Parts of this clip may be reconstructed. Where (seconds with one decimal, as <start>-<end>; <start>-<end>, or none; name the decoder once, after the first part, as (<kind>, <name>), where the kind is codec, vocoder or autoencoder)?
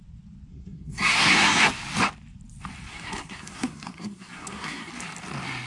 0.5-1.7 (codec, SNAC); 2.9-4.9